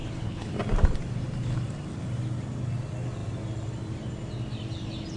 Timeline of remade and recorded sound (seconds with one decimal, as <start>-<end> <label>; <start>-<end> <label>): 0.0-0.5 remade; 0.5-5.2 recorded